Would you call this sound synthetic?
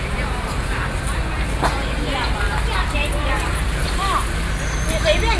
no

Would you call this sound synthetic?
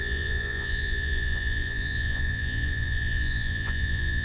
yes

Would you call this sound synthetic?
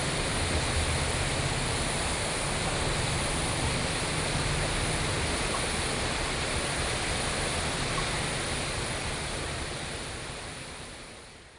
no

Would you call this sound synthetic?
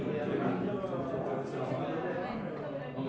no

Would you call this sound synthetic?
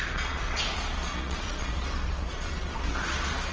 yes